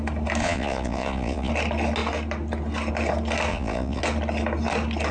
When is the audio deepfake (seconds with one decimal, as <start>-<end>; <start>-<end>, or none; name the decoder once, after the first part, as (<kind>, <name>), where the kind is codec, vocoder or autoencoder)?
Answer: 0.4-1.5 (vocoder, Vocos); 3.5-4.0